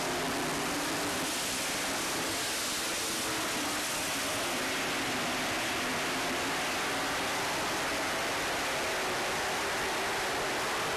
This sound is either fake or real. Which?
real